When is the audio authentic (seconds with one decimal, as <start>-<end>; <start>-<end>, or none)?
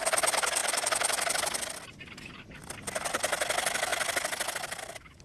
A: 0.0-5.2